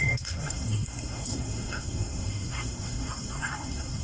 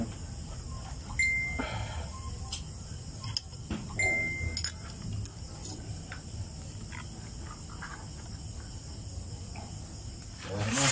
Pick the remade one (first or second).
first